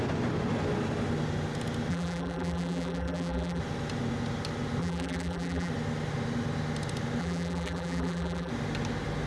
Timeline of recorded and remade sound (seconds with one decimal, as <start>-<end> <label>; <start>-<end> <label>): 0.0-1.9 recorded; 1.9-3.6 remade; 3.6-4.8 recorded; 4.8-5.7 remade; 5.7-7.2 recorded; 7.2-8.5 remade; 8.5-9.3 recorded

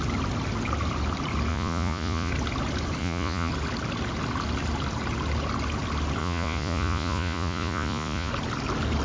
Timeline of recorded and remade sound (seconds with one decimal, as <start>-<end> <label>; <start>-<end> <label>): 0.0-1.5 recorded; 1.5-2.3 remade; 2.3-3.0 recorded; 3.0-3.5 remade; 3.5-6.2 recorded; 6.2-8.3 remade; 8.3-9.0 recorded